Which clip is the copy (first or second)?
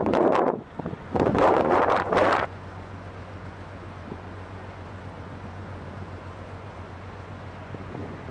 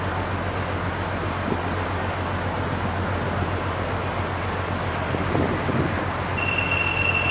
first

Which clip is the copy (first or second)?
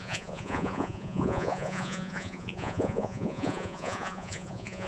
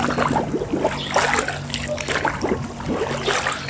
first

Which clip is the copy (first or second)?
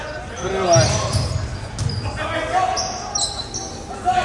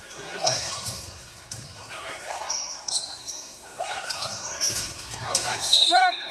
second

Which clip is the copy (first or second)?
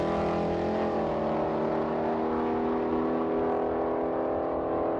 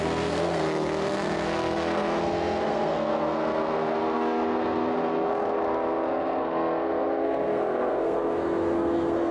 second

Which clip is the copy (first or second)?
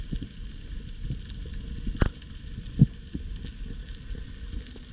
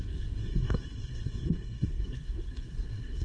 second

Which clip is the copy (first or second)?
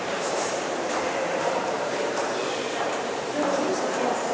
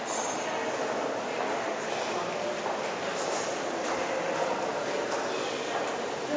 first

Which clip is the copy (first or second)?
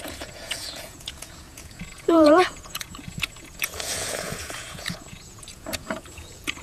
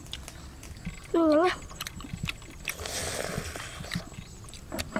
first